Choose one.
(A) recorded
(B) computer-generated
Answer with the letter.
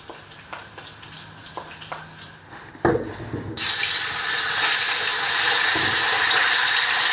A